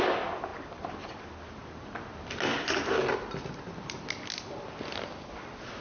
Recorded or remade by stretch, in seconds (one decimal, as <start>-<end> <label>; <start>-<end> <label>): 0.0-5.8 recorded